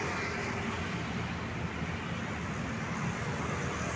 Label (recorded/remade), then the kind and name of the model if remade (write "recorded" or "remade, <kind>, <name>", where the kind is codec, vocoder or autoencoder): recorded